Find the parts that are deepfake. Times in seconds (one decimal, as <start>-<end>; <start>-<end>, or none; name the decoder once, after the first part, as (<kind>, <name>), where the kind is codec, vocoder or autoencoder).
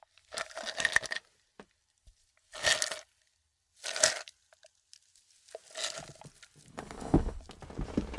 6.7-7.4 (codec, HILCodec)